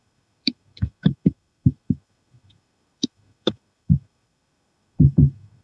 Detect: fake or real fake